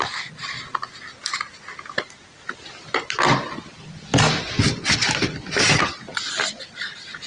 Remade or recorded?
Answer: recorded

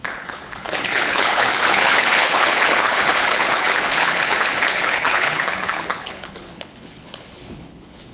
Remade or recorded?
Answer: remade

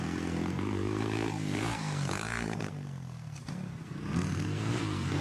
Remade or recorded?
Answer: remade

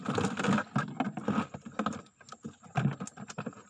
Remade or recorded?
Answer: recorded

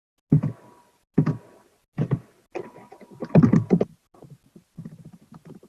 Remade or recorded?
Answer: recorded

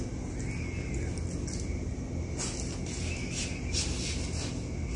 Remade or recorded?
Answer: recorded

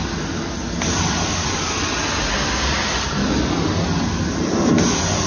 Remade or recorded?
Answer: recorded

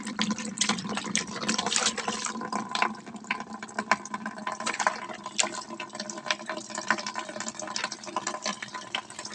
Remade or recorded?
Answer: remade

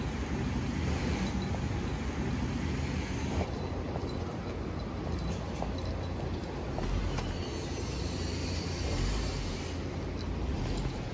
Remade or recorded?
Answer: recorded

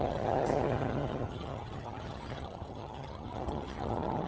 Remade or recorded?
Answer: remade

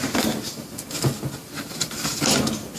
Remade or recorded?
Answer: recorded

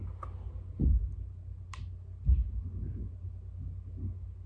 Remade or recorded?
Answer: recorded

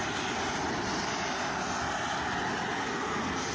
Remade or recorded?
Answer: recorded